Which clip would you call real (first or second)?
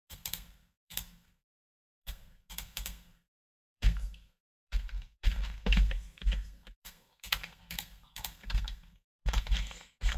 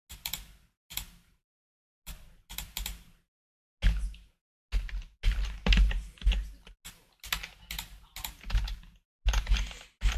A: second